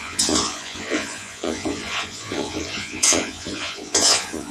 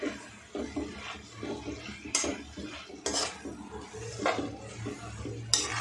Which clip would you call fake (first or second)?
first